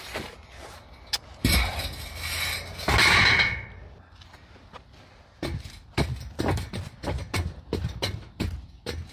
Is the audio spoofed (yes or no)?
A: no